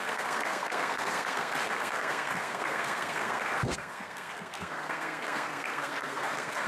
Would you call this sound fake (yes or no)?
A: yes